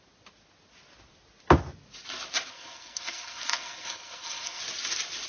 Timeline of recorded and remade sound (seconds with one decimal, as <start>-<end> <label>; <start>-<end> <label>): 0.0-2.5 recorded; 2.5-4.6 remade; 4.6-5.3 recorded